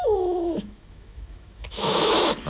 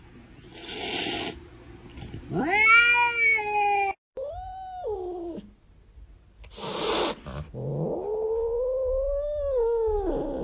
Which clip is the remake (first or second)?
first